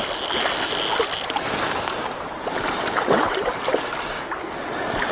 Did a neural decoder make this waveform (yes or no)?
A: no